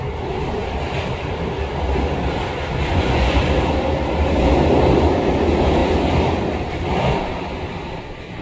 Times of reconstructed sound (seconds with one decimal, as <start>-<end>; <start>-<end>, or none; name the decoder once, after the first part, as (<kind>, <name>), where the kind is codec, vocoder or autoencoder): 2.9-3.4 (vocoder, Vocos)